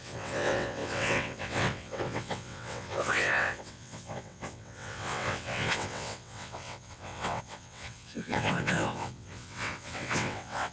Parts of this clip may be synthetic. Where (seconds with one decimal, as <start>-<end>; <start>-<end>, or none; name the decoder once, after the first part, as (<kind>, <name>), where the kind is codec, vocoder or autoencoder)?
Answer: 0.0-10.7 (vocoder, WaveNeXt)

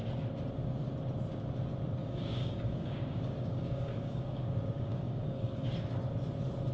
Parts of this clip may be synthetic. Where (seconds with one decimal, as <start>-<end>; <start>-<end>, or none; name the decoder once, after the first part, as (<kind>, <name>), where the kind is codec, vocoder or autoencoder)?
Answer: 2.0-5.7 (codec, DAC)

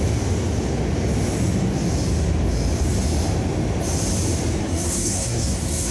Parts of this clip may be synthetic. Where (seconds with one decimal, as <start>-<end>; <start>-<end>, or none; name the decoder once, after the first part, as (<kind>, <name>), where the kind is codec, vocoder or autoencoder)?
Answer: 4.6-5.9 (codec, SNAC)

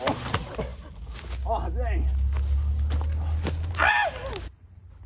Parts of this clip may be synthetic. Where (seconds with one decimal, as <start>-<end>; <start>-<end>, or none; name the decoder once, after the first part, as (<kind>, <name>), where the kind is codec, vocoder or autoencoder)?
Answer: none

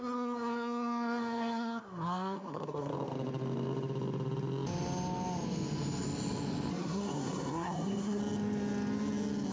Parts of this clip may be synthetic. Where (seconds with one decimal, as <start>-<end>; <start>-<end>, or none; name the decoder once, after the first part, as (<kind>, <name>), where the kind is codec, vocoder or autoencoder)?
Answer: 0.0-2.9 (codec, SNAC); 6.7-8.2

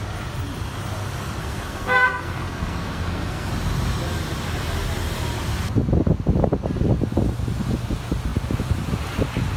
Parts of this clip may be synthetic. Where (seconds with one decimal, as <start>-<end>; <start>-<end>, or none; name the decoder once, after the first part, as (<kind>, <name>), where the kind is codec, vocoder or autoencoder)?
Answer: 1.4-3.5 (codec, SNAC)

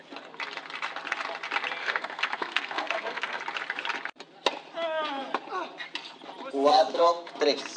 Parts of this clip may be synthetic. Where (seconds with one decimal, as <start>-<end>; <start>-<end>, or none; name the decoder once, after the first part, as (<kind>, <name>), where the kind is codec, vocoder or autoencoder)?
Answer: 1.8-3.4 (codec, SNAC); 6.7-7.3